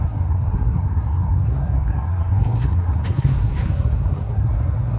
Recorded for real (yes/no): no